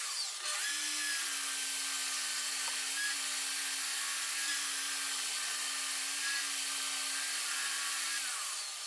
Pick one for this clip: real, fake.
real